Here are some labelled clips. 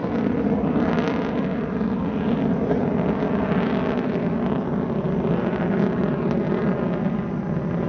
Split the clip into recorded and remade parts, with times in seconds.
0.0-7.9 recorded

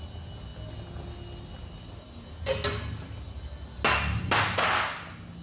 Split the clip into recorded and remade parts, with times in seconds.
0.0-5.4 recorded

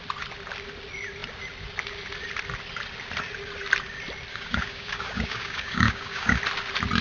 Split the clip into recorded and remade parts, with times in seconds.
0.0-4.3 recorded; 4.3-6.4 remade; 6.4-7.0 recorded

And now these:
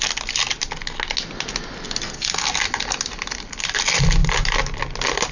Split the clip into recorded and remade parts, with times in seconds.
0.0-5.3 recorded

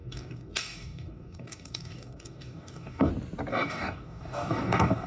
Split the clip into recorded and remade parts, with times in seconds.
0.0-3.1 remade; 3.1-3.5 recorded; 3.5-5.1 remade

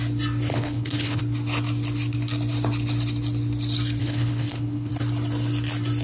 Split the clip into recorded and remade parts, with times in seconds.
0.0-0.5 recorded; 0.5-1.2 remade; 1.2-4.0 recorded; 4.0-4.9 remade; 4.9-6.0 recorded

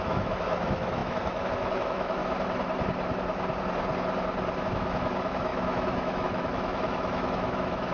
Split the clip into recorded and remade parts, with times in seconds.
0.0-2.2 remade; 2.2-4.6 recorded; 4.6-7.9 remade

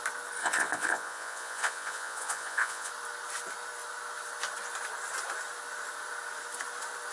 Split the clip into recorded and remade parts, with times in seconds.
0.0-0.4 recorded; 0.4-2.9 remade; 2.9-7.1 recorded